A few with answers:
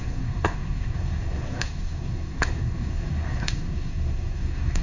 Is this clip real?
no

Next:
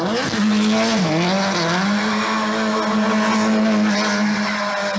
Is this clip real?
yes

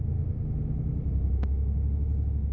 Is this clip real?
yes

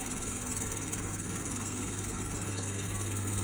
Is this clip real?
no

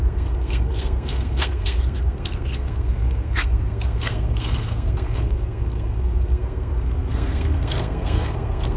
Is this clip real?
no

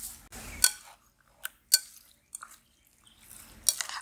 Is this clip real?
yes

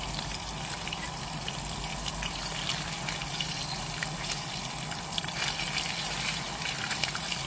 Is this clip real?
yes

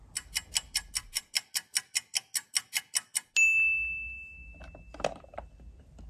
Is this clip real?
yes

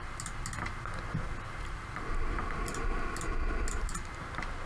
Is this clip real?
yes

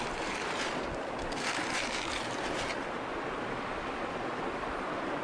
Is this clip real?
yes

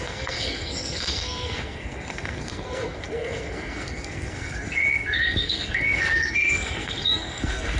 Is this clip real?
no